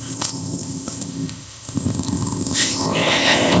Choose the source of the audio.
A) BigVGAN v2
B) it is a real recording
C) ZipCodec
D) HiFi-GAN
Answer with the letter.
C